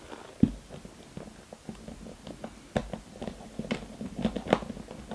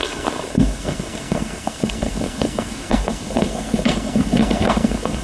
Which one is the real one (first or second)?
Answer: first